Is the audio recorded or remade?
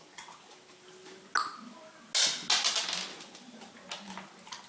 recorded